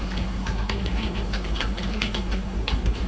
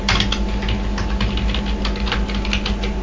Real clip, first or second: second